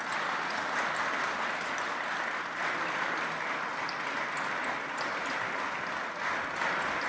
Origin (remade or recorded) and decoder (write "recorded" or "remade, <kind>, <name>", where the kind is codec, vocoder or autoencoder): recorded